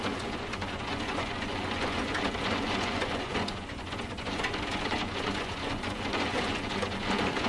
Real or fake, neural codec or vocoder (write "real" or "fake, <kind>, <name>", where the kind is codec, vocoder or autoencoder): fake, vocoder, Vocos